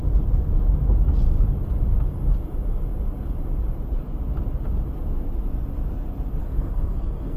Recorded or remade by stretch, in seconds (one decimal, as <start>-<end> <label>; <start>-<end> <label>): 0.0-6.4 recorded; 6.4-7.4 remade